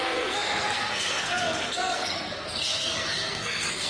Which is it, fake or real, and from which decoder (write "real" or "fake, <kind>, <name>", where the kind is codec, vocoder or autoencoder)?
fake, codec, SNAC